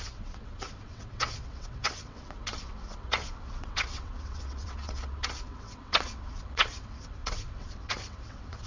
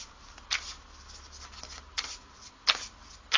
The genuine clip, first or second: second